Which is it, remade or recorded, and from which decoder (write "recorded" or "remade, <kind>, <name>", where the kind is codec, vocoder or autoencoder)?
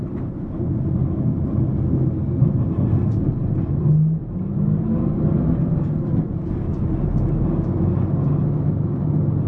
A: recorded